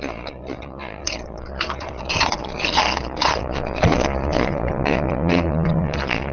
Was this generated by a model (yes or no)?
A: yes